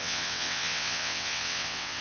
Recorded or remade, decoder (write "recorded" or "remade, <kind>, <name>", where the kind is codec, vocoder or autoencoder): remade, vocoder, WaveNeXt